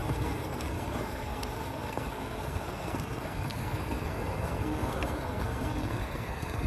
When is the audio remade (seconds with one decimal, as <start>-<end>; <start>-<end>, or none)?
0.0-6.7